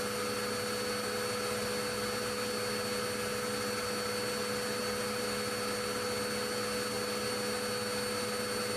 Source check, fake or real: real